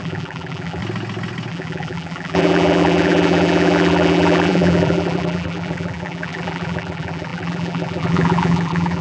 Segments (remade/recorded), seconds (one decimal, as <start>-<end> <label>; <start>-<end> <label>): 0.0-0.8 remade; 0.8-1.5 recorded; 1.5-9.0 remade